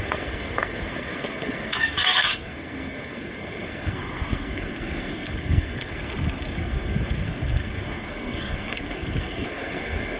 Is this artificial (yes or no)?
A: yes